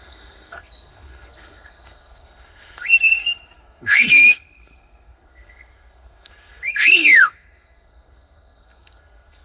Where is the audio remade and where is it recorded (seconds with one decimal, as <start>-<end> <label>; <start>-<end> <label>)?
0.0-9.4 remade